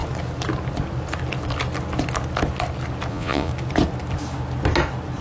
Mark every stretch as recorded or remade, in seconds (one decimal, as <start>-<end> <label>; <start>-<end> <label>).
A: 0.0-3.1 recorded; 3.1-3.5 remade; 3.5-5.2 recorded